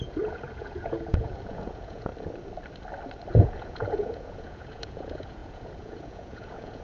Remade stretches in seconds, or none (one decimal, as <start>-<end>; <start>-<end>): 0.0-2.1; 3.3-6.8